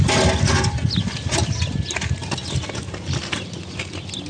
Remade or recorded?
recorded